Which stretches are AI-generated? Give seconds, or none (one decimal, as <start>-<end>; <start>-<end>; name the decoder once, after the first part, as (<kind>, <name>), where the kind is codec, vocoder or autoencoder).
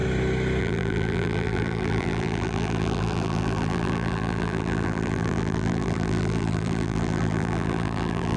0.6-8.4 (vocoder, BigVGAN v2)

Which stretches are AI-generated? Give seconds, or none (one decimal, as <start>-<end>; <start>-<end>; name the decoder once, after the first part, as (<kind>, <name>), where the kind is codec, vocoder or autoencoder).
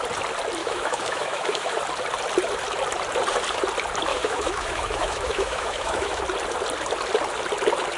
0.6-1.8 (autoencoder, DAC-VAE); 4.1-6.2